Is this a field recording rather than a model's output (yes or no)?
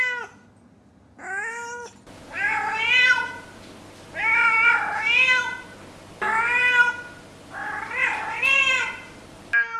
yes